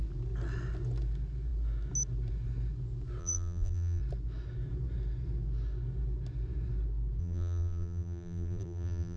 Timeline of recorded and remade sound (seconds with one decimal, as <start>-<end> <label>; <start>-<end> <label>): 0.0-3.2 recorded; 3.2-4.0 remade; 4.0-7.2 recorded; 7.2-9.2 remade